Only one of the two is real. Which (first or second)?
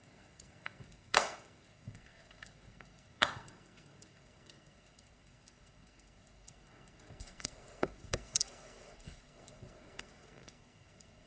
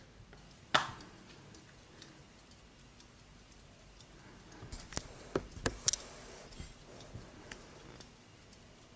second